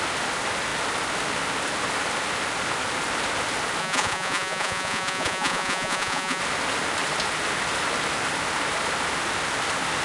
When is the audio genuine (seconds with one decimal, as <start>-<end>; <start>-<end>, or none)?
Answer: 0.0-3.8; 6.4-10.0